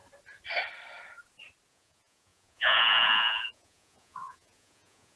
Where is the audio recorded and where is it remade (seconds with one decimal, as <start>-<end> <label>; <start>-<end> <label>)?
0.0-1.7 recorded; 1.7-5.2 remade